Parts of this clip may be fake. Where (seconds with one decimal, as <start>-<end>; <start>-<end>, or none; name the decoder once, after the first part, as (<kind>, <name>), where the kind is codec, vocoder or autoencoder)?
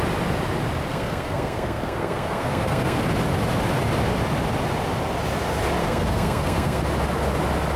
0.9-3.0 (codec, SNAC); 5.8-6.8